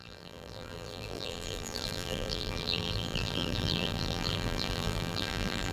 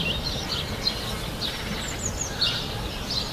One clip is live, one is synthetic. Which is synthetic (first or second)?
first